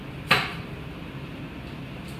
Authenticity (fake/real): real